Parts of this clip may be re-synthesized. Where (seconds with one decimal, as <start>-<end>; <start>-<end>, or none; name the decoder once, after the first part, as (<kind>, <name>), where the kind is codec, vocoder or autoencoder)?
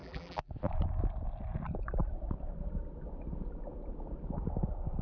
0.0-0.5 (vocoder, BigVGAN v2)